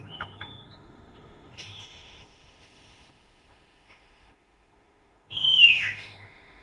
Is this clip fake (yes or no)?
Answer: yes